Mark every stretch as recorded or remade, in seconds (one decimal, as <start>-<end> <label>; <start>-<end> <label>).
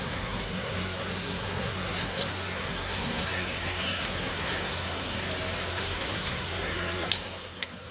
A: 0.0-5.2 remade; 5.2-5.7 recorded; 5.7-7.9 remade